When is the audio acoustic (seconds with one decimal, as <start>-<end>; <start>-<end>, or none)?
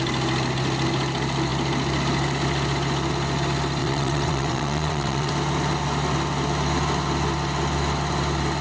0.0-3.8; 5.3-8.6